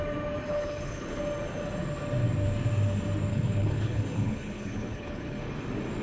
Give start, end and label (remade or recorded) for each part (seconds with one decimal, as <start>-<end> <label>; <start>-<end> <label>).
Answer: 0.0-0.5 recorded; 0.5-1.2 remade; 1.2-3.3 recorded; 3.3-5.4 remade; 5.4-6.0 recorded